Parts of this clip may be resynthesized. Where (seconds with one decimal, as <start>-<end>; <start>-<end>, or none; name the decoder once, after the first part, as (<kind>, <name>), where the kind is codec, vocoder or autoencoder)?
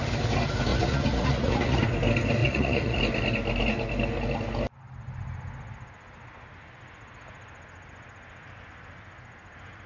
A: 0.7-1.8 (vocoder, Vocos); 2.4-3.0